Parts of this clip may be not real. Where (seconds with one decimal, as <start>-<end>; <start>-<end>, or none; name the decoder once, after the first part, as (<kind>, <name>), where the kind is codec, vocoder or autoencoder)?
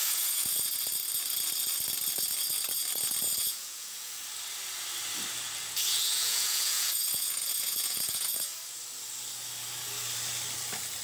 0.0-0.9 (vocoder, Vocos); 3.4-4.2; 5.7-8.5